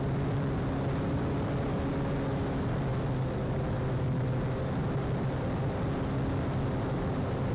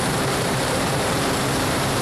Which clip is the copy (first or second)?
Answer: second